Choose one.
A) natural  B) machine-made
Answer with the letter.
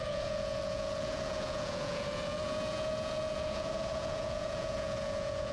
B